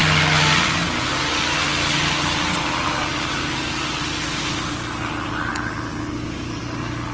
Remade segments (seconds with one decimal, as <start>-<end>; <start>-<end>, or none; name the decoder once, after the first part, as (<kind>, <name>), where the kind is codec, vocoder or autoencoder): none